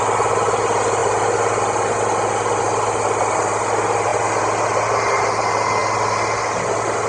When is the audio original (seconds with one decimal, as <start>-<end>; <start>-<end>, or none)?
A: 0.0-7.1